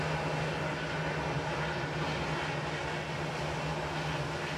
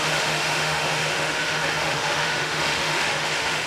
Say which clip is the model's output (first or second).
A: second